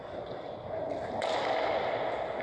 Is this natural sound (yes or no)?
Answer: yes